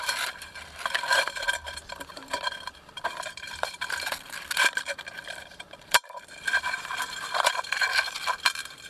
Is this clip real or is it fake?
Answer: fake